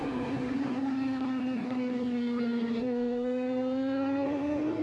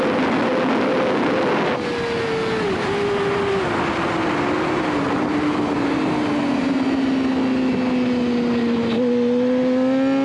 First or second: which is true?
second